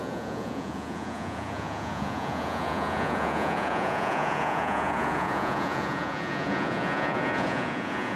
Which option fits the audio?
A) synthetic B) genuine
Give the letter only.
A